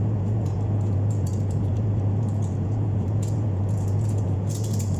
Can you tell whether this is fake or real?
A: fake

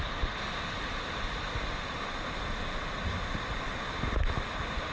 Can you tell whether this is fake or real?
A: real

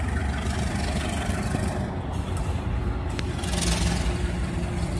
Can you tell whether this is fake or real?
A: real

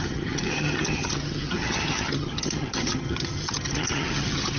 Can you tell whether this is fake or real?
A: fake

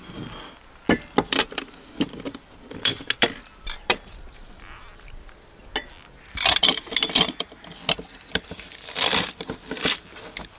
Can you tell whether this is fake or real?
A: real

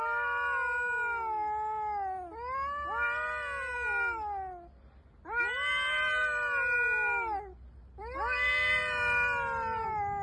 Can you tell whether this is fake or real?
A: real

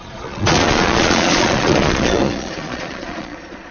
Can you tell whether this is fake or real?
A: fake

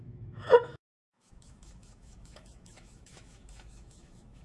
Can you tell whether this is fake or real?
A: fake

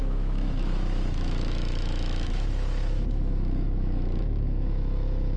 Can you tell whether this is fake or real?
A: fake